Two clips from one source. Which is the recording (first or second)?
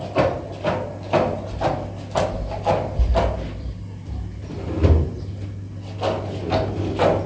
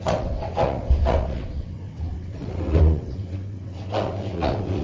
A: first